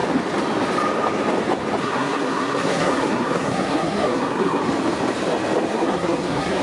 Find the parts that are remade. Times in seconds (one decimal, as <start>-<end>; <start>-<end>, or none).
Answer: 1.8-4.6; 5.7-6.6